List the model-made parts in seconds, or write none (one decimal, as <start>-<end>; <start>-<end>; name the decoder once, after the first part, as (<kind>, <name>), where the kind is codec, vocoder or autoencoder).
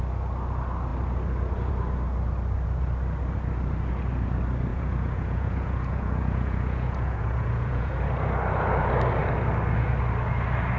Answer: 4.7-8.0 (vocoder, Vocos)